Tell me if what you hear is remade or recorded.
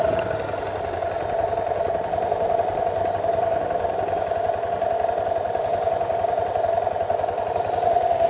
recorded